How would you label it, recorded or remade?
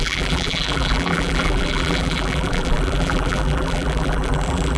remade